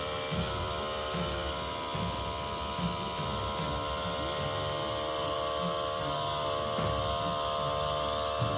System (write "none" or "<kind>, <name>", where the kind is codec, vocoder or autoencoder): none